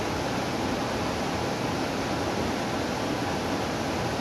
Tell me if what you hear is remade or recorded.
recorded